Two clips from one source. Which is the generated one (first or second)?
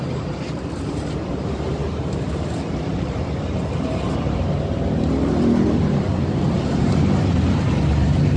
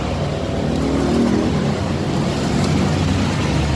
first